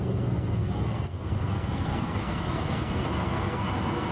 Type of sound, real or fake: fake